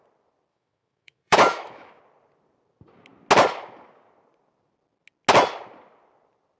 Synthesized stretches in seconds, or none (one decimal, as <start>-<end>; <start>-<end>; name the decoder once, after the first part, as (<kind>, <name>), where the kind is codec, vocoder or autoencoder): 0.5-2.0 (autoencoder, DAC-VAE)